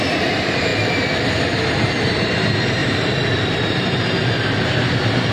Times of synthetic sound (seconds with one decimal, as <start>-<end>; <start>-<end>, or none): 0.0-5.3